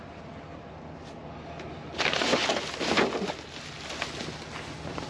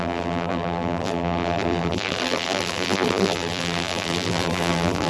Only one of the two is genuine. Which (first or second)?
first